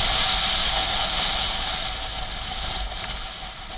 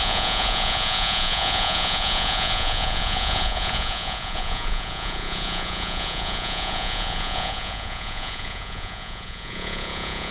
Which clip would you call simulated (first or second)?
second